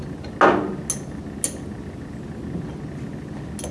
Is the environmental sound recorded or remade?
recorded